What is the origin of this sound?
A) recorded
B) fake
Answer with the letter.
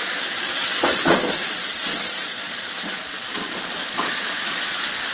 B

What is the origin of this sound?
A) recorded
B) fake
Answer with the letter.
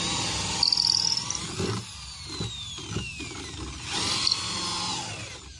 A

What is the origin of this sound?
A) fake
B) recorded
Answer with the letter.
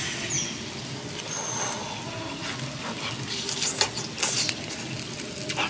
B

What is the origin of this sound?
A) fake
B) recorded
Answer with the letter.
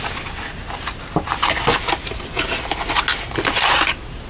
B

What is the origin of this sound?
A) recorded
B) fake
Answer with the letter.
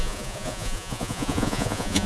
B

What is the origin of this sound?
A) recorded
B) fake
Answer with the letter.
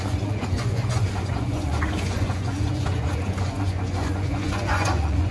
B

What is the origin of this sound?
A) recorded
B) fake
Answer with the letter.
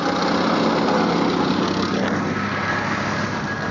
A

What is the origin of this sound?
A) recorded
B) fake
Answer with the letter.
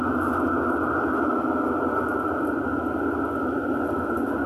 A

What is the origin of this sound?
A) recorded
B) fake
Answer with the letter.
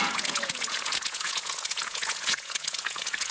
B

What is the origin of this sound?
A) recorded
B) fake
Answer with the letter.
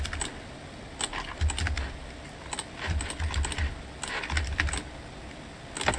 A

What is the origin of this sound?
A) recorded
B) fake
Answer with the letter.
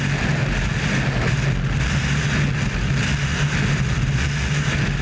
A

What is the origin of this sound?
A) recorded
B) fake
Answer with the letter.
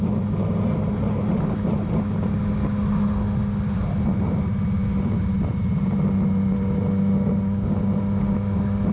A